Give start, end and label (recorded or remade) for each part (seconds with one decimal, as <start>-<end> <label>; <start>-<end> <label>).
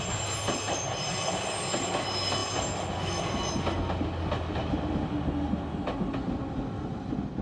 0.0-7.4 recorded